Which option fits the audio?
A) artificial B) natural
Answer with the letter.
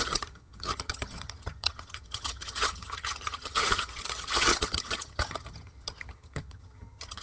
A